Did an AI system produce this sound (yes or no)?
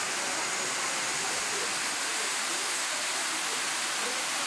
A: no